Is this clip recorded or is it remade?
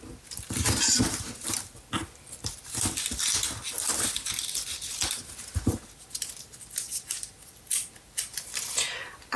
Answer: recorded